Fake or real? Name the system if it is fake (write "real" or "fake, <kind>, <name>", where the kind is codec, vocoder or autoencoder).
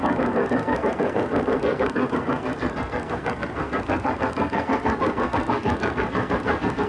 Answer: fake, codec, SNAC